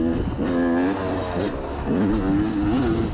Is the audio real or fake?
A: real